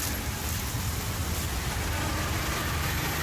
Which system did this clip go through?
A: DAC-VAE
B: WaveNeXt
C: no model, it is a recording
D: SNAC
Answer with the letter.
C